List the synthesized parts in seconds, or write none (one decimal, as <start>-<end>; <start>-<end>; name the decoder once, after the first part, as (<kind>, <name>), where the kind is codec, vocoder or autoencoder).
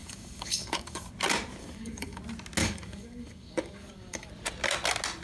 0.0-1.1 (codec, DAC); 1.6-2.2; 2.6-4.3